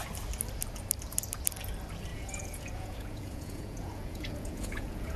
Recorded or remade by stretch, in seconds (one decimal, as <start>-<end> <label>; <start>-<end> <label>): 0.0-2.1 recorded; 2.1-5.2 remade